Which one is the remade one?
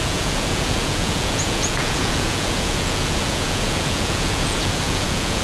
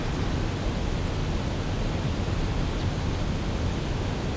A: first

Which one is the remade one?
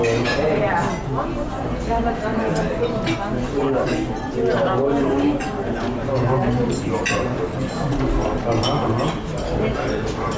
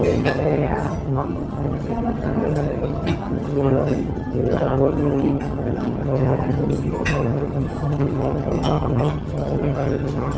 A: second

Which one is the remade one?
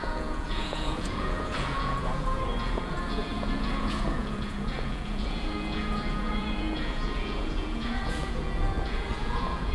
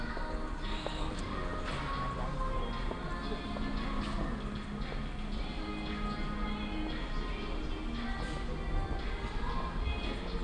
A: first